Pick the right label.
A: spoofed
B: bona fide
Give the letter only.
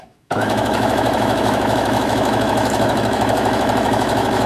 A